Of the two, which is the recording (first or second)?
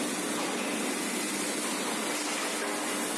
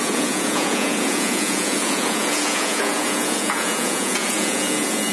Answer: first